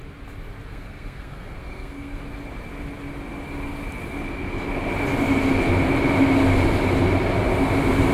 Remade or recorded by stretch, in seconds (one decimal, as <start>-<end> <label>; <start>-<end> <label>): 0.0-0.7 recorded; 0.7-2.2 remade; 2.2-8.1 recorded